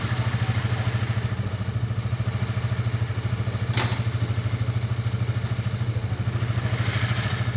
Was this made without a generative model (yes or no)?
yes